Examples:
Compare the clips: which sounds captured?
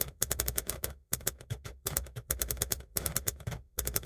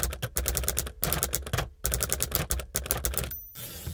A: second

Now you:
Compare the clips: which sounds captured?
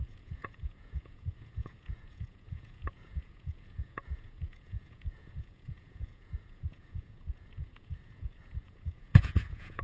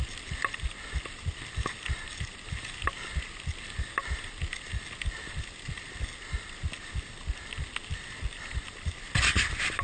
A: second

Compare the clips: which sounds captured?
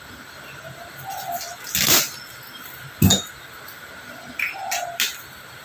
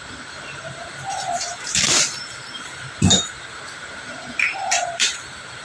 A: first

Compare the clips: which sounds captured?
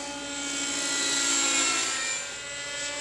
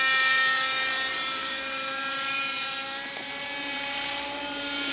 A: first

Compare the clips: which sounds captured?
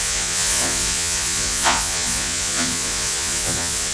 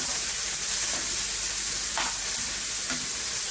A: second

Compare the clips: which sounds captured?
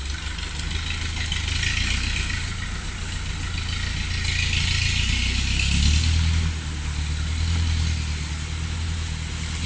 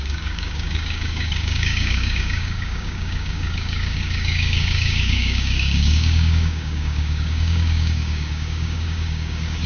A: first